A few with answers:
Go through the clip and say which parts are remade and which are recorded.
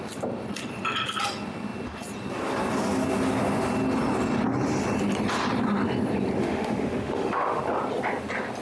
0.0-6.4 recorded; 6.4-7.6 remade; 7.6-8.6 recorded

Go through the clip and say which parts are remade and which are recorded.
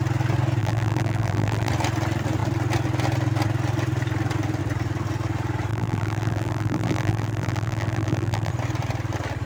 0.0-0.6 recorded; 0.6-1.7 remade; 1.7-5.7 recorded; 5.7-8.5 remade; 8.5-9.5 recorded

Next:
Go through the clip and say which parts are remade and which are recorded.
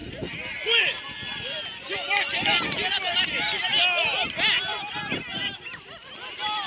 0.0-3.7 remade; 3.7-4.3 recorded; 4.3-6.7 remade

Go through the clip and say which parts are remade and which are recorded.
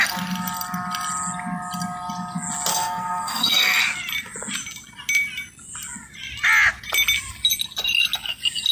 0.0-2.7 recorded; 2.7-3.8 remade; 3.8-8.7 recorded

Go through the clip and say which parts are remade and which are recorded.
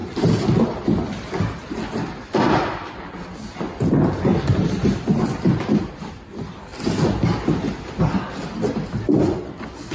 0.0-3.9 recorded; 3.9-6.7 remade; 6.7-9.9 recorded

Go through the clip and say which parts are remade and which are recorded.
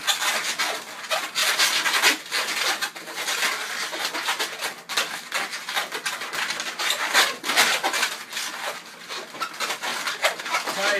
0.0-11.0 recorded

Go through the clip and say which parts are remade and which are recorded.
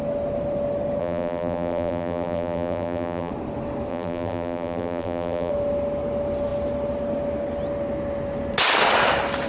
0.0-1.0 recorded; 1.0-3.3 remade; 3.3-3.9 recorded; 3.9-5.5 remade; 5.5-9.5 recorded